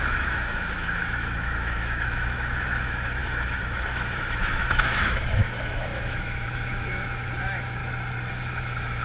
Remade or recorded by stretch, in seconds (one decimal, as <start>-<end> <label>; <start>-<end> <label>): 0.0-7.8 remade; 7.8-8.3 recorded; 8.3-9.0 remade